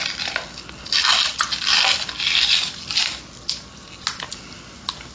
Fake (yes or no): no